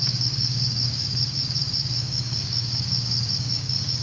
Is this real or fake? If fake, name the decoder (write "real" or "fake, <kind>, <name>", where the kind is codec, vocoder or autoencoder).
fake, codec, DAC